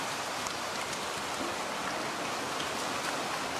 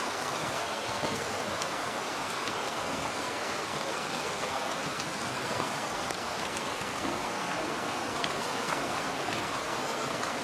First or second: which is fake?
second